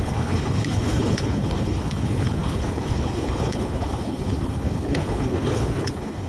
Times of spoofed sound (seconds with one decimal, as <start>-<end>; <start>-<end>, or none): 0.0-6.3